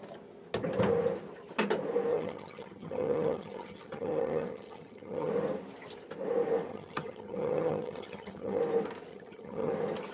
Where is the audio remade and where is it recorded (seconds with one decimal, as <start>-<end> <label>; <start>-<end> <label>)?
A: 0.0-2.1 recorded; 2.1-5.3 remade; 5.3-6.7 recorded; 6.7-8.6 remade; 8.6-9.1 recorded; 9.1-9.7 remade; 9.7-10.1 recorded